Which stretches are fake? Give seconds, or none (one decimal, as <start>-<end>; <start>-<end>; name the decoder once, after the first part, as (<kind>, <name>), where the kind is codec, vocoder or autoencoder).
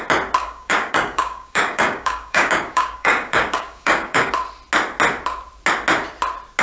0.4-4.3 (codec, DAC)